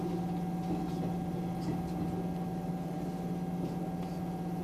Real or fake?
real